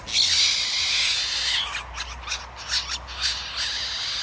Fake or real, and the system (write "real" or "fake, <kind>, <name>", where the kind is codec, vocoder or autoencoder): real